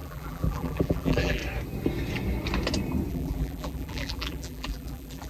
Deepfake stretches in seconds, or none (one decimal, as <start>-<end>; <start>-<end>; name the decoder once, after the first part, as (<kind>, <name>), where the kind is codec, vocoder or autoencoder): 0.0-1.4 (vocoder, BigVGAN v2); 3.1-5.3